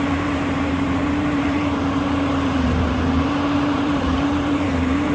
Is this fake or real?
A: fake